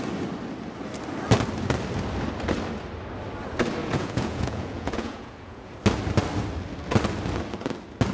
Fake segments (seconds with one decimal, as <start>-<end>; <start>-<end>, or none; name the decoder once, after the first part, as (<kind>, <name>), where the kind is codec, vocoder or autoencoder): 3.8-5.7 (vocoder, Vocos)